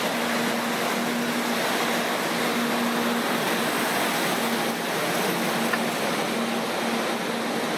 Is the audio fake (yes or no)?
no